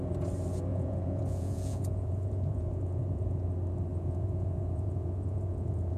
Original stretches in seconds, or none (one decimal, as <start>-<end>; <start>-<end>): 0.0-0.7; 3.5-3.9

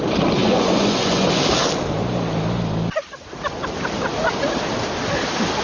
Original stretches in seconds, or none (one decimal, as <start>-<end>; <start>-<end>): 0.0-0.4; 1.4-5.6

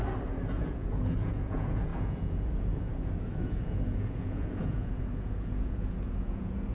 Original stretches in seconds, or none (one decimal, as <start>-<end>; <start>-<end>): 0.0-0.5